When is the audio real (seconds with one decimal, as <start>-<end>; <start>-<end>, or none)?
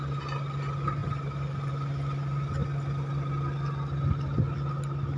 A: 0.0-5.2